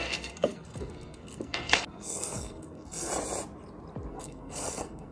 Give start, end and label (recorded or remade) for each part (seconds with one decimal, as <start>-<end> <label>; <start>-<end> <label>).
0.0-3.1 remade; 3.1-4.1 recorded; 4.1-5.1 remade